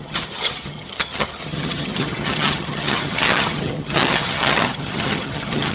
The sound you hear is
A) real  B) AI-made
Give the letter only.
B